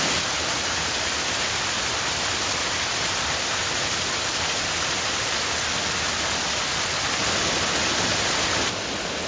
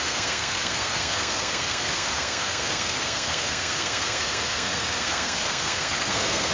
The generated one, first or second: second